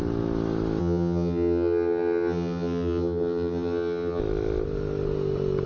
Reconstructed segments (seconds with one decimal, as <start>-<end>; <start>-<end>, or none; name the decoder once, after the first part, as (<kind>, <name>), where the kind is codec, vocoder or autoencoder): 0.8-4.2 (vocoder, HiFi-GAN)